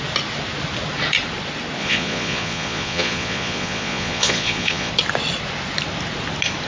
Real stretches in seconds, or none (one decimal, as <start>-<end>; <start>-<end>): 0.0-1.8; 4.9-6.7

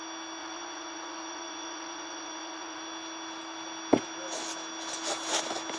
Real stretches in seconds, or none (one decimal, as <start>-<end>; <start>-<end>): 0.0-0.4; 2.8-5.8

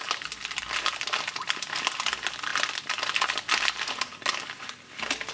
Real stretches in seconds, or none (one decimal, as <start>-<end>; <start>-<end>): 0.0-5.3